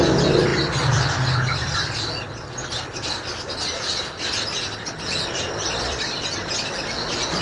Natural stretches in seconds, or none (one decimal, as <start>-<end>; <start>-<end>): 0.0-7.4